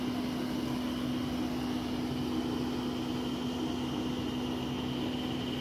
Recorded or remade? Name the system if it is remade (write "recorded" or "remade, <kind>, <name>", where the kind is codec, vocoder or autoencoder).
recorded